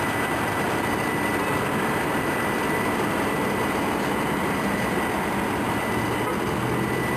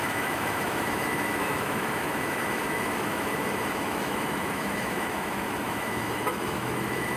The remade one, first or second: second